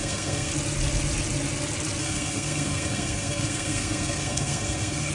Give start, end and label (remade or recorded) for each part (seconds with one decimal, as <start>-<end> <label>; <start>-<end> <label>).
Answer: 0.0-0.5 remade; 0.5-2.0 recorded; 2.0-5.1 remade